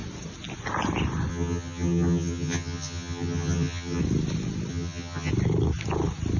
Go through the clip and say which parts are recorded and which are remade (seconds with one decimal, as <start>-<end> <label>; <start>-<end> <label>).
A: 0.0-1.3 recorded; 1.3-4.0 remade; 4.0-4.7 recorded; 4.7-5.3 remade; 5.3-6.4 recorded